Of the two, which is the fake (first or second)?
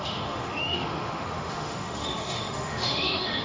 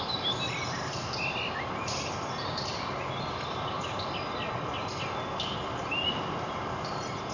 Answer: first